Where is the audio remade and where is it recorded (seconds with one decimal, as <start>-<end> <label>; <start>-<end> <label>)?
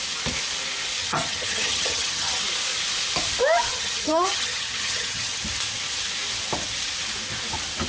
0.0-1.0 recorded; 1.0-2.4 remade; 2.4-3.7 recorded; 3.7-5.4 remade; 5.4-7.9 recorded